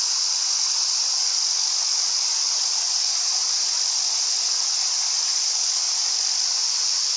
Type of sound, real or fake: real